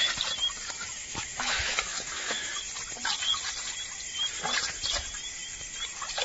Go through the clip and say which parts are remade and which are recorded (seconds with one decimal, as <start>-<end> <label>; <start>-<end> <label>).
0.0-0.6 recorded; 0.6-2.6 remade; 2.6-6.2 recorded